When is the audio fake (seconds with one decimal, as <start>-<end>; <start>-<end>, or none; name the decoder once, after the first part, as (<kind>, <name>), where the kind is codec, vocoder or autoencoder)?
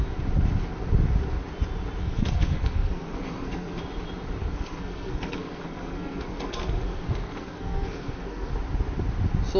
2.0-3.8 (codec, SNAC); 4.4-8.5